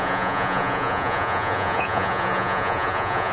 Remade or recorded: remade